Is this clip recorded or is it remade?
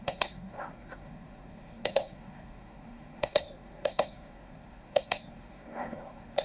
remade